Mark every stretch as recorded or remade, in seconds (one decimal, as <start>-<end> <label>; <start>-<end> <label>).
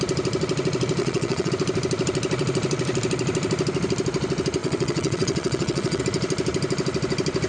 0.0-1.0 recorded; 1.0-1.5 remade; 1.5-4.6 recorded; 4.6-6.0 remade; 6.0-7.5 recorded